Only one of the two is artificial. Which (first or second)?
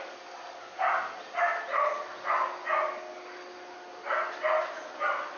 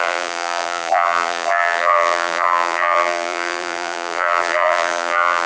second